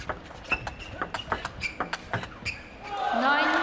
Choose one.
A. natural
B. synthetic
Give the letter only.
A